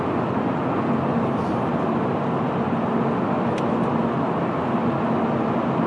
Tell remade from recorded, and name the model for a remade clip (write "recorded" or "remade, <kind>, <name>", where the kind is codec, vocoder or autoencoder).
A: recorded